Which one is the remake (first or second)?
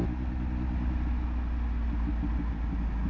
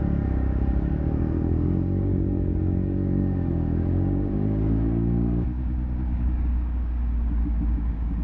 second